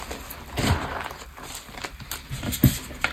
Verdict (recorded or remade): recorded